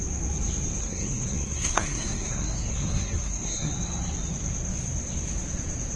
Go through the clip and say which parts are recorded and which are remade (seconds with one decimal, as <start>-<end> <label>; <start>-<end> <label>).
0.0-0.8 recorded; 0.8-3.7 remade; 3.7-6.0 recorded

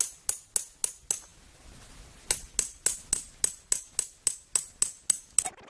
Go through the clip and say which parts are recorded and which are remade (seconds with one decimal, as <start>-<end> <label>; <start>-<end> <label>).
0.0-5.7 recorded

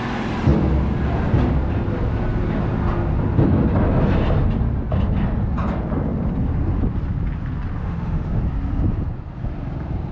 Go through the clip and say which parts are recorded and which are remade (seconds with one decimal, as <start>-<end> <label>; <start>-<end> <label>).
0.0-7.8 recorded; 7.8-8.4 remade; 8.4-10.1 recorded